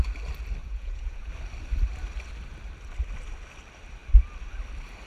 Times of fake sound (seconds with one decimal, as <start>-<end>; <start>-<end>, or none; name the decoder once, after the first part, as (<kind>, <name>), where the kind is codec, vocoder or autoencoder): 0.6-1.3 (vocoder, Vocos)